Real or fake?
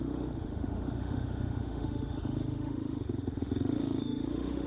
fake